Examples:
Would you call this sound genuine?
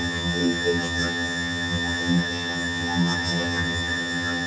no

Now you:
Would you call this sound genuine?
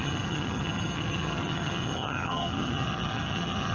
no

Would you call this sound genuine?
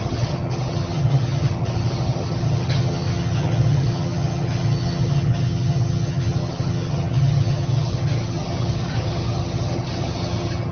no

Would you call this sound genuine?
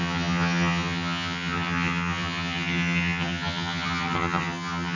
no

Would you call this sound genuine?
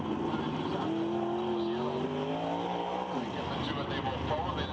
yes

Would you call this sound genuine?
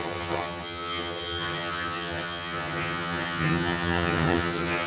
no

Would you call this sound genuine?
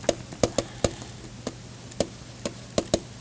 yes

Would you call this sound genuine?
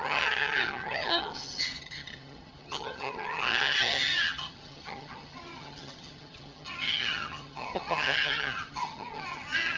no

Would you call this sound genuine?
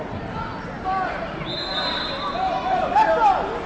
yes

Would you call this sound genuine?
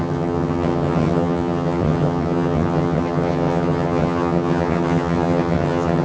no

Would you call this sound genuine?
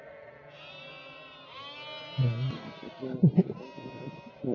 yes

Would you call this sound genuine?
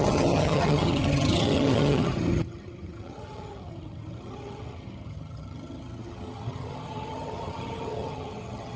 no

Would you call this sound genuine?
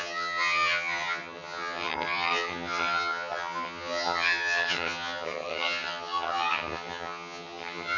no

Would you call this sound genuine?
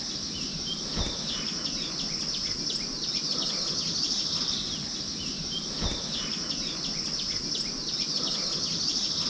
yes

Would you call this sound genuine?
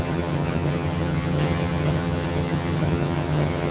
no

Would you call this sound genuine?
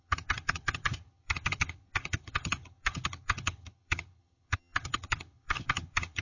no